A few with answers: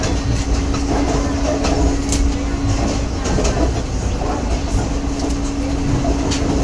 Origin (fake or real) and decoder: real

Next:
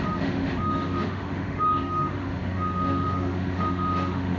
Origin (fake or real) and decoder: fake, autoencoder, DAC-VAE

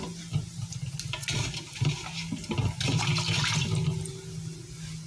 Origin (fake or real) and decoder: real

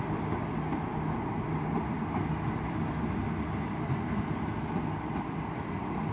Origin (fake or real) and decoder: real